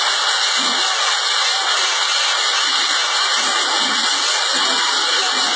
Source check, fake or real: real